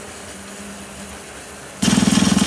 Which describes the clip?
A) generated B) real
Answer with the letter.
B